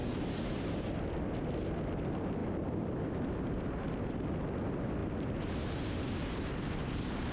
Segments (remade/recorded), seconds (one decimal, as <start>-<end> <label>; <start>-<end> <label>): 0.0-0.7 remade; 0.7-2.4 recorded; 2.4-3.7 remade; 3.7-7.3 recorded